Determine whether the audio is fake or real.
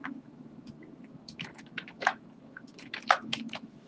fake